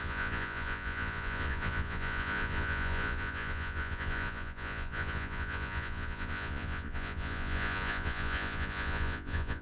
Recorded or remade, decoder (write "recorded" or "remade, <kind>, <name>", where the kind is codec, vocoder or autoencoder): remade, vocoder, Vocos